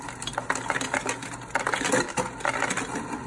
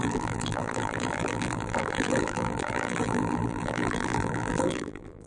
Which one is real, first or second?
first